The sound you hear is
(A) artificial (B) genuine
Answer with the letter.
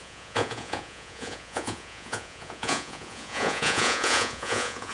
A